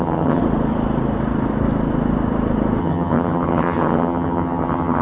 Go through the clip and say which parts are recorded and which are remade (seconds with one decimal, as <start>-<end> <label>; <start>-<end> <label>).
0.0-0.4 remade; 0.4-2.8 recorded; 2.8-5.0 remade